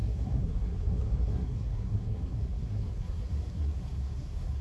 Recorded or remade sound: remade